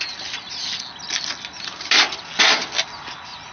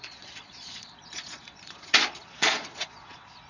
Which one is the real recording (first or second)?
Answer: first